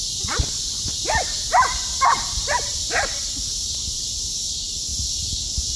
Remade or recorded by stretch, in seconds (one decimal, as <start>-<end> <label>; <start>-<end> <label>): 0.0-4.9 remade; 4.9-5.8 recorded